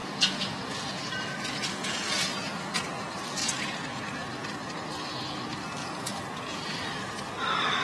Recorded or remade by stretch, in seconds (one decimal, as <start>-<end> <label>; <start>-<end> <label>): 0.0-2.9 remade; 2.9-3.4 recorded; 3.4-4.0 remade; 4.0-5.8 recorded; 5.8-6.8 remade; 6.8-7.8 recorded